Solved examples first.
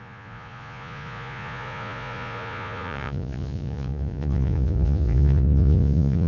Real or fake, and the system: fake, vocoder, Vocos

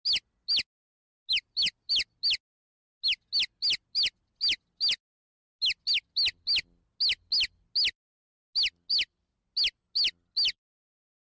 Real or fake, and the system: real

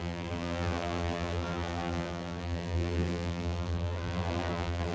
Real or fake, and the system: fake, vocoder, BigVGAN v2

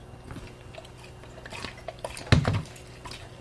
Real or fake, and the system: real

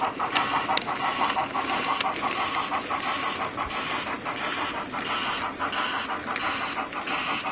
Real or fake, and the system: real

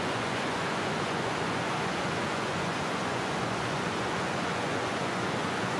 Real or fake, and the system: fake, vocoder, Vocos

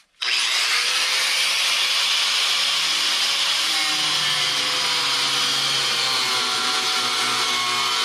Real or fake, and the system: real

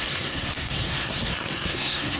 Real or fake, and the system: fake, codec, SNAC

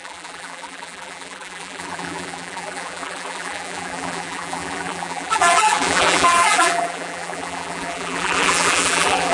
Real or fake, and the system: fake, vocoder, BigVGAN v2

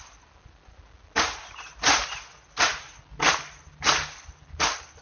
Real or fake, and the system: real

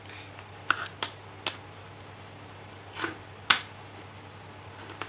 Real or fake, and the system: real